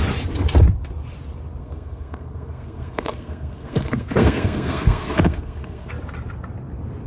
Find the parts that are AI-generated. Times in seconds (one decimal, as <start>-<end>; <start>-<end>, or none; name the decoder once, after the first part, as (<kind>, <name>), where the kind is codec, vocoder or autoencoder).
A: 1.6-5.9 (codec, SNAC)

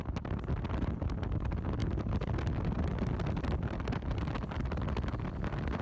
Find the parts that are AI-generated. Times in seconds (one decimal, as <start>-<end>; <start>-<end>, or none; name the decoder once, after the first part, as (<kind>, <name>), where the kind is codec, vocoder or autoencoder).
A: none

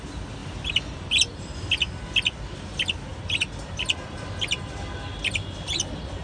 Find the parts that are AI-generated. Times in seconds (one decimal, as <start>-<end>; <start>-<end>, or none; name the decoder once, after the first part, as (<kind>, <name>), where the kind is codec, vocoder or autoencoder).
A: none